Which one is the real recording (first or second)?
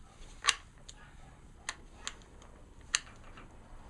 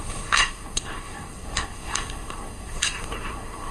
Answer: first